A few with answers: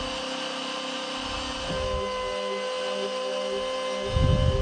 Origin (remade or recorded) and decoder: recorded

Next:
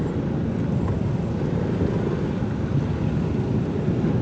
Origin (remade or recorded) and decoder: recorded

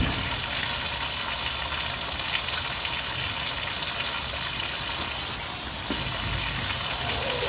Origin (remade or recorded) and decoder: recorded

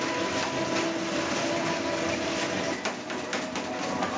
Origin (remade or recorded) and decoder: recorded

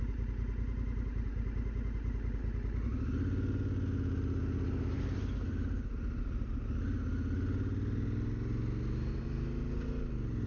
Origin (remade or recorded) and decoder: recorded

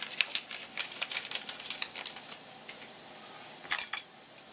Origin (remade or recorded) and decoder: recorded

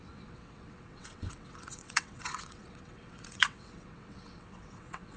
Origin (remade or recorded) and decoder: remade, vocoder, WaveNeXt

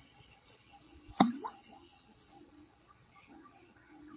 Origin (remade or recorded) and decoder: remade, vocoder, WaveNeXt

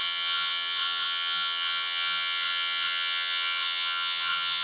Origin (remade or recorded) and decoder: remade, vocoder, WaveNeXt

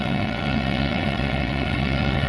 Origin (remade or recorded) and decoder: remade, vocoder, WaveNeXt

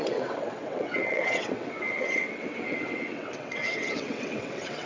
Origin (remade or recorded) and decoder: remade, vocoder, WaveNeXt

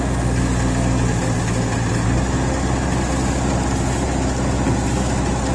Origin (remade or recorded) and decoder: recorded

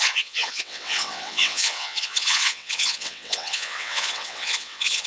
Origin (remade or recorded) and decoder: remade, vocoder, WaveNeXt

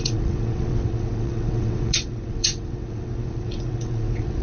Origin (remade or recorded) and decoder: remade, vocoder, WaveNeXt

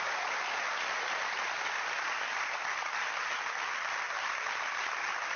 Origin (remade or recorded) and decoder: recorded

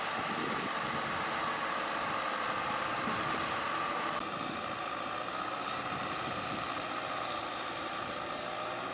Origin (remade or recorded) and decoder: recorded